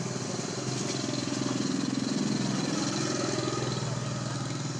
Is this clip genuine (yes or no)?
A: yes